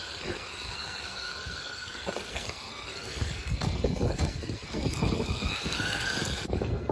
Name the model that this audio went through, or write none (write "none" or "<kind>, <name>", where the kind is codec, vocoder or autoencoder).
codec, SNAC